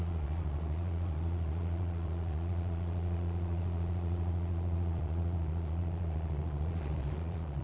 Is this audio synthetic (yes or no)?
yes